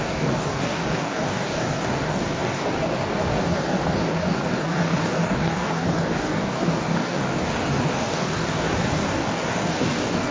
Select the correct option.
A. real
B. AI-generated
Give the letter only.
B